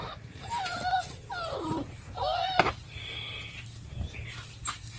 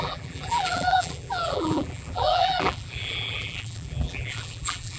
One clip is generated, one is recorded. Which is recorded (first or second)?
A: first